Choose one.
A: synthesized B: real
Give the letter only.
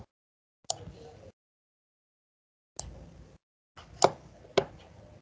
B